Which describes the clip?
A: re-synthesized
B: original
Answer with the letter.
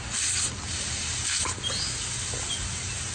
B